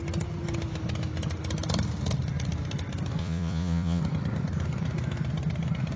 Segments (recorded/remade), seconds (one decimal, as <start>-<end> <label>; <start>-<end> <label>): 0.0-3.2 recorded; 3.2-4.0 remade; 4.0-6.0 recorded